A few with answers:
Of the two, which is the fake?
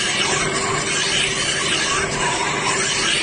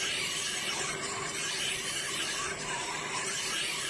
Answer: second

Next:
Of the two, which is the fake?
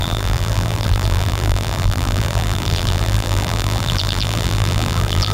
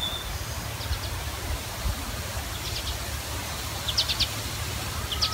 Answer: first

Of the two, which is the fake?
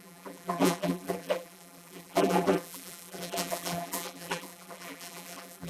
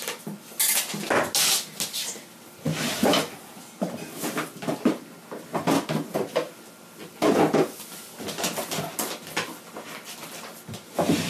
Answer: first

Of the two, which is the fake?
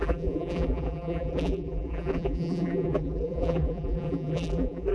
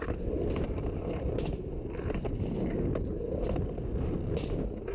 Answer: first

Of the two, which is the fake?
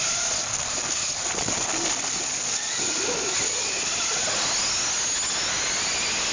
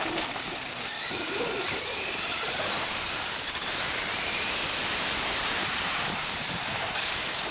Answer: second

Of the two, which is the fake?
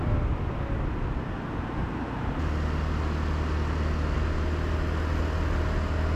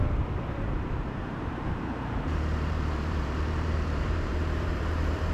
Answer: second